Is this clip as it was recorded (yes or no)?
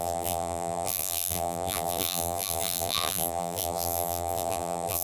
no